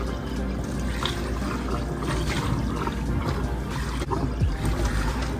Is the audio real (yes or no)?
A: yes